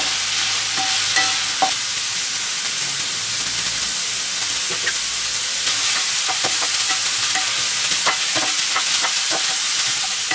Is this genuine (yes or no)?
yes